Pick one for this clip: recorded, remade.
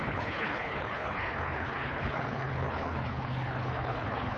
remade